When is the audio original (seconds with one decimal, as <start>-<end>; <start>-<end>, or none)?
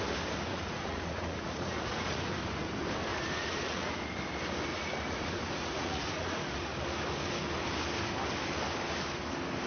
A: 0.0-0.5; 2.4-3.1; 4.0-4.7; 6.4-9.7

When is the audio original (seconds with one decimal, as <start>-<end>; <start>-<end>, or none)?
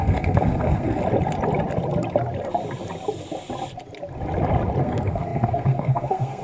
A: 1.0-4.8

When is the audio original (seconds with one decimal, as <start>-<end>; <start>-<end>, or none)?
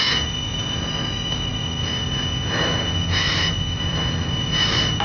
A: 0.0-5.0